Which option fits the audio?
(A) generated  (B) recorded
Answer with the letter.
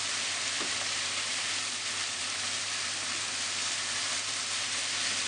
A